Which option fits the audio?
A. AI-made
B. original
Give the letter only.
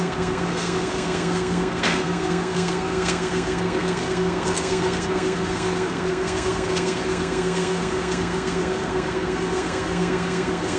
A